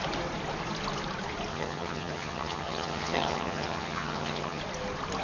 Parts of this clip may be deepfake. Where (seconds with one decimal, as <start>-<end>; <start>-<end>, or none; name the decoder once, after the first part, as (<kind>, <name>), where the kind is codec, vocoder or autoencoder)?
1.5-4.6 (vocoder, HiFi-GAN)